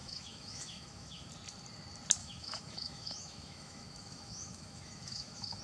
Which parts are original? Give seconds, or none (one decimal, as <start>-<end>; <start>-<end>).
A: 1.3-2.2